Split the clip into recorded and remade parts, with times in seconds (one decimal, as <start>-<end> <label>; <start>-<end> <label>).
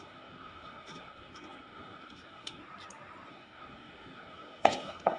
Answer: 0.0-2.6 remade; 2.6-3.3 recorded; 3.3-5.2 remade